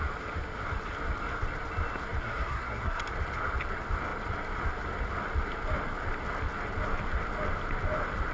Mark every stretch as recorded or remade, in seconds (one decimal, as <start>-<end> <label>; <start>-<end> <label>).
0.0-2.2 recorded; 2.2-3.0 remade; 3.0-8.3 recorded